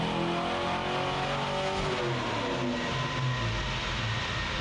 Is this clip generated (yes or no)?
no